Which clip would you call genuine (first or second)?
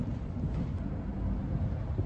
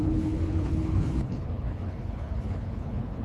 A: first